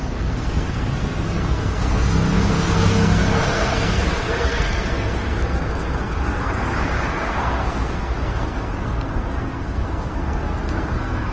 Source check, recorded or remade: remade